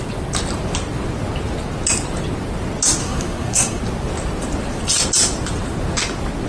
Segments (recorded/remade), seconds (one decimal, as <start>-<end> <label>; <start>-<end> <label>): 0.0-3.0 recorded; 3.0-3.8 remade; 3.8-6.5 recorded